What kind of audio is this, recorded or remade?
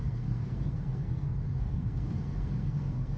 remade